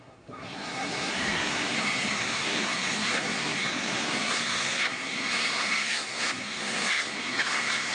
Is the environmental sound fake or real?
fake